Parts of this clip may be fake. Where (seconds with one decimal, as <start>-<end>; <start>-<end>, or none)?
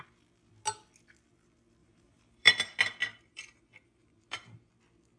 1.8-2.5; 3.1-4.7